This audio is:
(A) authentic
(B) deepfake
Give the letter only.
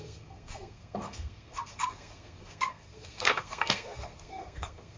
B